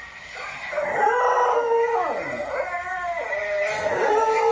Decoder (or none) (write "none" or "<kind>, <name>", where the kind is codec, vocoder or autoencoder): none